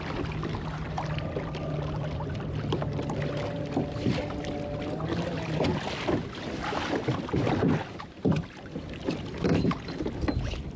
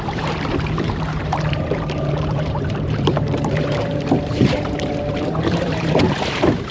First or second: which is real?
first